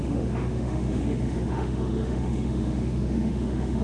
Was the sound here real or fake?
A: fake